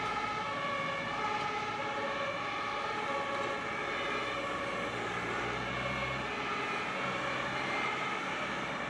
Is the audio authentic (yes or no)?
yes